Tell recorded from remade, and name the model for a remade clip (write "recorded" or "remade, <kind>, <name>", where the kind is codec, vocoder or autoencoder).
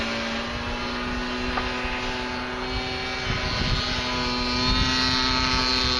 recorded